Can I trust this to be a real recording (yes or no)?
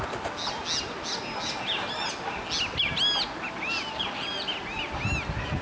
yes